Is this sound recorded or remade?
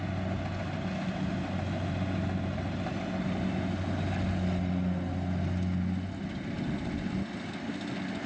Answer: recorded